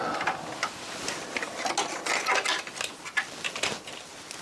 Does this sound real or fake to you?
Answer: real